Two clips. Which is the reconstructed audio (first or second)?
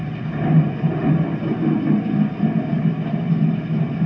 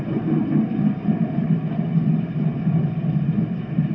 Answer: second